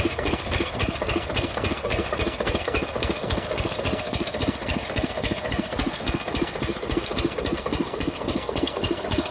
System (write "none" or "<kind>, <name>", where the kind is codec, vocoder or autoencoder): codec, SNAC